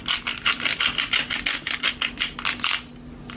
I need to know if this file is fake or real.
real